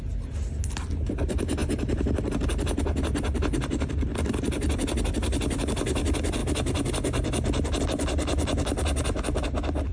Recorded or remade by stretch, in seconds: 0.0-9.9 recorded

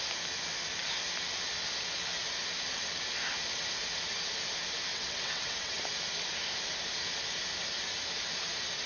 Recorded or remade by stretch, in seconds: 0.0-4.9 recorded; 4.9-5.8 remade; 5.8-8.9 recorded

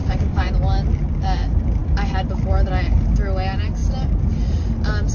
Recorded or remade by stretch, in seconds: 0.0-0.5 remade; 0.5-5.1 recorded

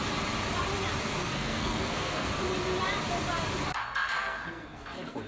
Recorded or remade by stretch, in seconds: 0.0-1.2 recorded; 1.2-2.3 remade; 2.3-3.7 recorded; 3.7-5.3 remade

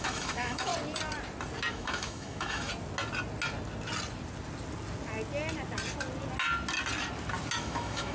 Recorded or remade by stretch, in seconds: 0.0-0.7 remade; 0.7-1.7 recorded; 1.7-2.7 remade; 2.7-7.6 recorded; 7.6-8.1 remade

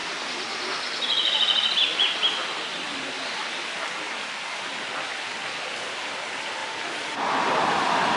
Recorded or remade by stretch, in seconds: 0.0-6.6 recorded; 6.6-7.2 remade; 7.2-8.2 recorded